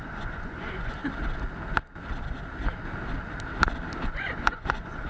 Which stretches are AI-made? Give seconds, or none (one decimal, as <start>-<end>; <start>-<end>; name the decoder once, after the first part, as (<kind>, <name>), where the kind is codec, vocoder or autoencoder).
0.0-1.0 (vocoder, Vocos); 4.1-5.1